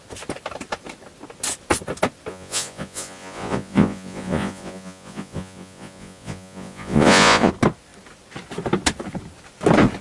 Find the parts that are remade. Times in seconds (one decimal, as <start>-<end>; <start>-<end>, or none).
2.3-7.5